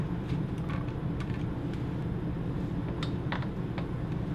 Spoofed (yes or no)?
no